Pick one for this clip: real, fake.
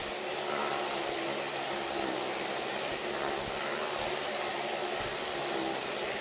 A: real